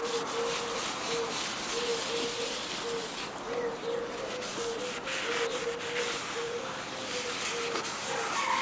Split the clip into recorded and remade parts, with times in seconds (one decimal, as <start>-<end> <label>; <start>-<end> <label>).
0.0-8.6 recorded